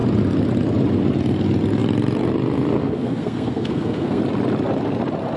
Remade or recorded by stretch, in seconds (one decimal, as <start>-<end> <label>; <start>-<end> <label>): 0.0-2.8 recorded; 2.8-4.2 remade; 4.2-5.4 recorded